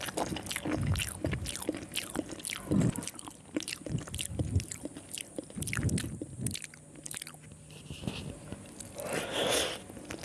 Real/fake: real